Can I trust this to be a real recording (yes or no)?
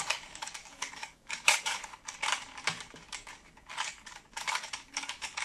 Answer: no